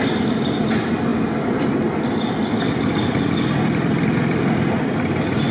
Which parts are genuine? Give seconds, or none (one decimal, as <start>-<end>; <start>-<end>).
1.1-4.4